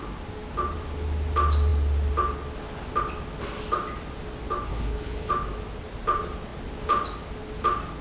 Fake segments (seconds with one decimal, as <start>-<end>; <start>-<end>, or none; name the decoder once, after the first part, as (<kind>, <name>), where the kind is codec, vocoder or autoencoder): 4.7-5.3 (codec, HILCodec)

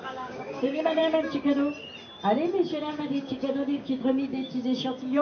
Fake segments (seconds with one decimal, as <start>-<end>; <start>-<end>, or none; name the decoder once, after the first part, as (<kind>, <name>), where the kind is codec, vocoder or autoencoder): 0.0-1.0 (codec, DAC); 2.8-5.2

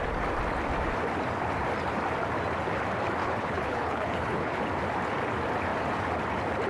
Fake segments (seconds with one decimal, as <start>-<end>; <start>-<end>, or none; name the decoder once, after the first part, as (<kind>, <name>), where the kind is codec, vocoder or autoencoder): 3.2-4.6 (codec, HILCodec)

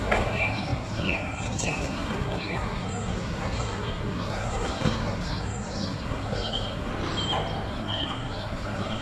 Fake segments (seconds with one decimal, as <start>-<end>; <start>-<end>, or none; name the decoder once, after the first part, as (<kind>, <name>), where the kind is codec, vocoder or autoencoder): 0.0-6.9 (codec, SNAC); 7.7-9.0

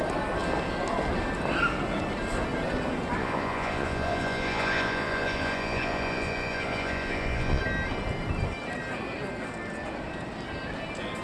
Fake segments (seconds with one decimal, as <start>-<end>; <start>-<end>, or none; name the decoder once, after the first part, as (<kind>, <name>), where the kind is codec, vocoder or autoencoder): 3.2-7.6 (vocoder, Vocos)

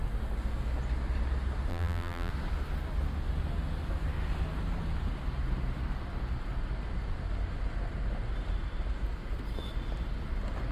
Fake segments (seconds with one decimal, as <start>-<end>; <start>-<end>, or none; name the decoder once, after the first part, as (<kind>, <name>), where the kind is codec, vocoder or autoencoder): 1.7-2.3 (vocoder, BigVGAN v2)

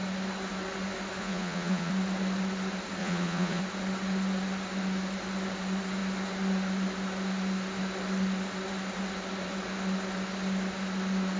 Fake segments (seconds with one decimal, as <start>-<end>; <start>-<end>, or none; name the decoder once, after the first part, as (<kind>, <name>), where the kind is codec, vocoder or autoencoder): 1.2-1.9 (vocoder, Vocos); 3.0-3.6

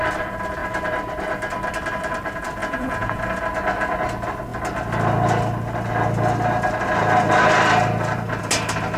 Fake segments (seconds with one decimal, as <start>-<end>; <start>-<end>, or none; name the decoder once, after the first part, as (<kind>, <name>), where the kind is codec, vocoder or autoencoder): 2.6-3.4 (vocoder, Vocos)